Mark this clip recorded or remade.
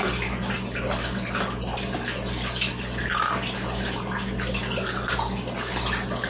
recorded